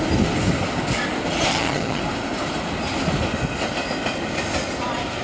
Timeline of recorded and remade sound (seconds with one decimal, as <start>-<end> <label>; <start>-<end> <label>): 0.0-1.5 recorded; 1.5-2.0 remade; 2.0-5.2 recorded